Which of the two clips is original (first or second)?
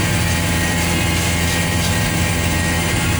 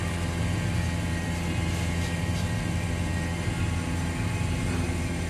first